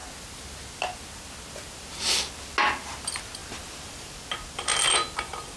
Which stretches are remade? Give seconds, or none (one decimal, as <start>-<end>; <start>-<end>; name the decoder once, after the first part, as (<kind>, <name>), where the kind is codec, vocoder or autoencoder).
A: 3.4-4.2 (vocoder, BigVGAN v2)